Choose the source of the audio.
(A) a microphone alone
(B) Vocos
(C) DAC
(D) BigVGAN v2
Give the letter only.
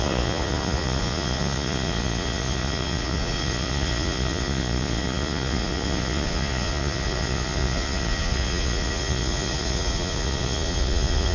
B